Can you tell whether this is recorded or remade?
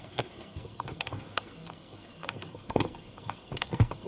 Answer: remade